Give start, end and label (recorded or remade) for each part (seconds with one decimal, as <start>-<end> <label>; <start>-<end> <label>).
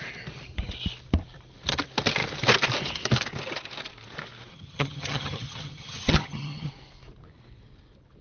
0.0-4.5 recorded; 4.5-6.7 remade; 6.7-8.2 recorded